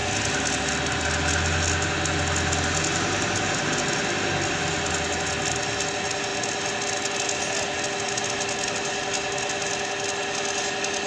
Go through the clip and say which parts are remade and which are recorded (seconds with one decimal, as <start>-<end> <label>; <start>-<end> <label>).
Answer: 0.0-11.1 recorded